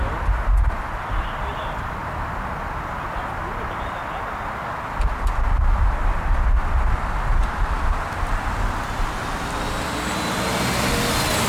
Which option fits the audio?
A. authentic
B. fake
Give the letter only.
A